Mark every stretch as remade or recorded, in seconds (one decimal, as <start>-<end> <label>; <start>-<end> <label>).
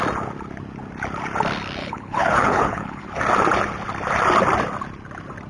0.0-1.8 recorded; 1.8-3.2 remade; 3.2-5.5 recorded